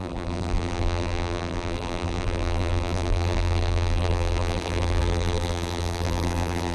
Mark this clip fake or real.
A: fake